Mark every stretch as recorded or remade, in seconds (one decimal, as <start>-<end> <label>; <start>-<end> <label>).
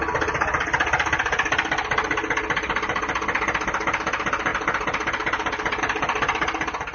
0.0-6.9 recorded